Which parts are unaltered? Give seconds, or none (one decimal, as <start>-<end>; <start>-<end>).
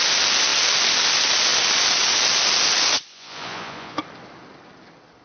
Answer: 0.0-3.1; 4.0-5.2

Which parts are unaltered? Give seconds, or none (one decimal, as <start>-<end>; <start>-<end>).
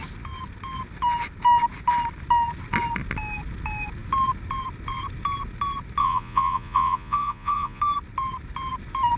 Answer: 0.0-6.0; 7.8-9.2